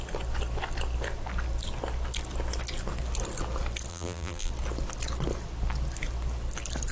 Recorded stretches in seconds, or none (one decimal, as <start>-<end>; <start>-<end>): 0.0-3.9; 4.5-6.9